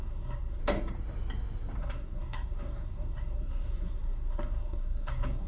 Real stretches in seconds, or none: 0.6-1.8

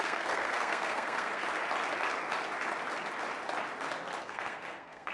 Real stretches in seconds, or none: 1.4-4.2